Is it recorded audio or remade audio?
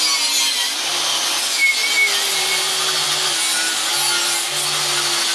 recorded